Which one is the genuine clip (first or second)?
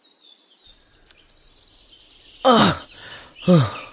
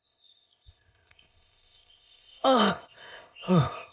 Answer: first